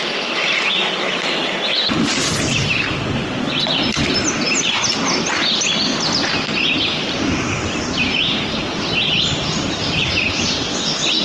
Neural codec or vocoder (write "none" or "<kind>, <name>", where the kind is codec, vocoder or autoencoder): none